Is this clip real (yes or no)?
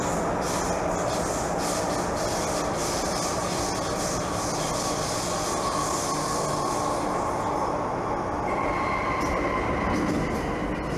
yes